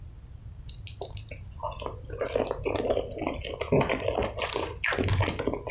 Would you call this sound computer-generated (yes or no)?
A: no